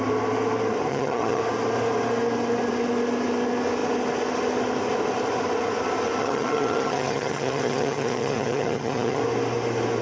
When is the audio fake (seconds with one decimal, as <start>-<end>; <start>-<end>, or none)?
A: 0.9-1.4; 6.2-9.2